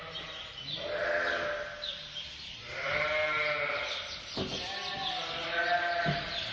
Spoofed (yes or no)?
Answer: no